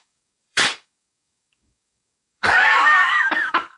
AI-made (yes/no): yes